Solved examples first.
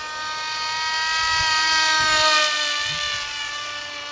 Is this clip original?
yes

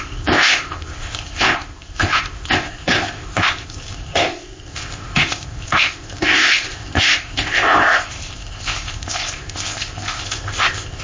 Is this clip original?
no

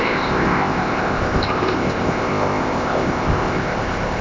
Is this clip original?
no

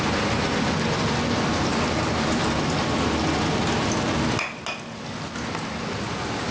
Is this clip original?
yes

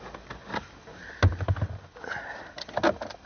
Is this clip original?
yes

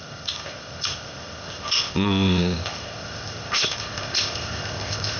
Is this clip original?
no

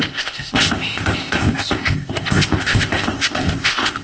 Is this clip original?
no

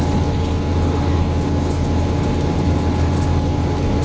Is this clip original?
yes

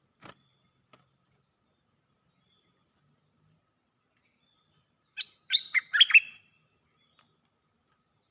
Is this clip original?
yes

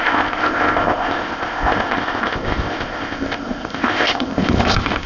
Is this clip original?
no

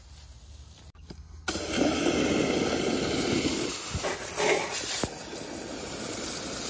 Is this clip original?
yes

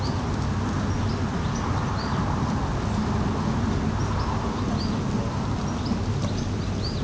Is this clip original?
yes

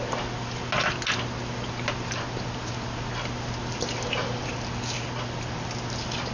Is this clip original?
yes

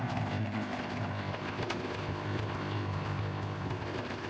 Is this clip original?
no